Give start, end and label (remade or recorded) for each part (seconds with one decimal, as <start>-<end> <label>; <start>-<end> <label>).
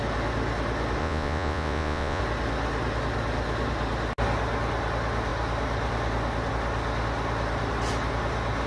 0.0-1.0 recorded; 1.0-2.2 remade; 2.2-8.7 recorded